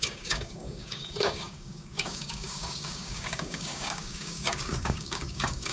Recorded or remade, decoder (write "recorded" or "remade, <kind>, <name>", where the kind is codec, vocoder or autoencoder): remade, codec, DAC